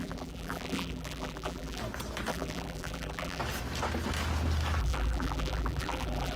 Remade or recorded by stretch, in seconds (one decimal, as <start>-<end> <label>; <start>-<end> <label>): 0.0-1.8 remade; 1.8-2.3 recorded; 2.3-3.4 remade; 3.4-4.8 recorded; 4.8-6.4 remade